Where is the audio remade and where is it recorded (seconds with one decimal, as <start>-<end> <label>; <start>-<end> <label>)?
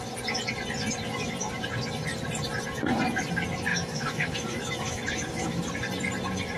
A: 0.0-3.7 recorded; 3.7-5.7 remade; 5.7-6.6 recorded